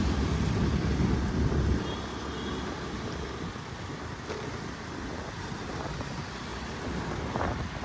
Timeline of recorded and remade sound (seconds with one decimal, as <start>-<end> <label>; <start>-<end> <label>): 0.0-7.8 recorded